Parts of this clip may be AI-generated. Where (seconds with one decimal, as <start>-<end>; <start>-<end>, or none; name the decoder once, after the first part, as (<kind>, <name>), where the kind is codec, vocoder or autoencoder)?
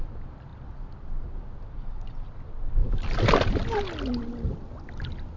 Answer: none